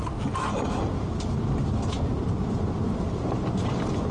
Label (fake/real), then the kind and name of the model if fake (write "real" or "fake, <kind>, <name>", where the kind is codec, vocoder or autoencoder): real